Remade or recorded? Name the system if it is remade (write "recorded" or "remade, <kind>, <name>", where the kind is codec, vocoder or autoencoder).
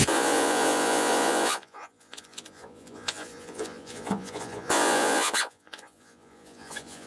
remade, vocoder, Vocos